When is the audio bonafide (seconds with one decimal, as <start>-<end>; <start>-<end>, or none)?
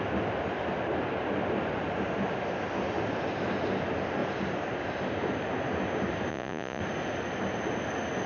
0.0-6.3; 6.8-8.3